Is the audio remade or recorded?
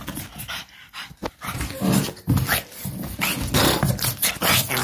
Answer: recorded